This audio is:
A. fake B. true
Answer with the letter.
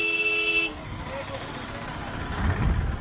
B